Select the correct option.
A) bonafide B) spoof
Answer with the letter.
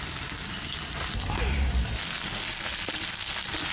A